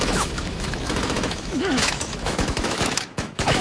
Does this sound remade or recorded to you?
remade